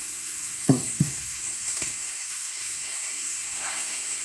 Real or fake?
fake